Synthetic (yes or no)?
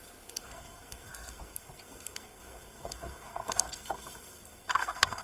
yes